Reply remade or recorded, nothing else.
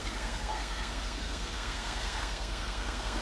remade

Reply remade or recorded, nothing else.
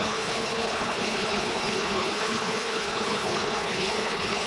remade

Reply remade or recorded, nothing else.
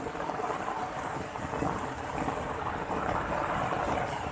recorded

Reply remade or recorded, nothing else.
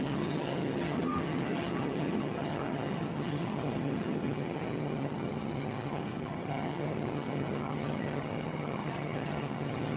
remade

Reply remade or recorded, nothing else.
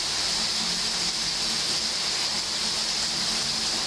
recorded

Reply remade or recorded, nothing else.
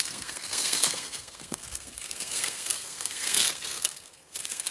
remade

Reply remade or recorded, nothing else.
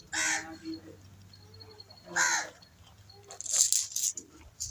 recorded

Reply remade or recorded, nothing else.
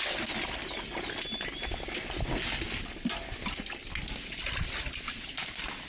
recorded